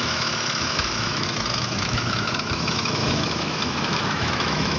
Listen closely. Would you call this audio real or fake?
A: fake